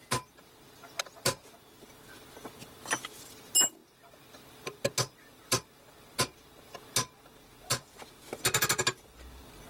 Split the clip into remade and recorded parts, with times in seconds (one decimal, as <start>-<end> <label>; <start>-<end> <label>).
0.0-9.7 recorded